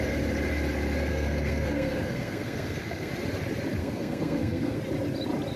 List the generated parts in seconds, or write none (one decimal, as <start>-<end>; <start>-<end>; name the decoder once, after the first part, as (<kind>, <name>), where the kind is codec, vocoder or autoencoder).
1.1-3.1 (codec, SNAC); 3.8-4.8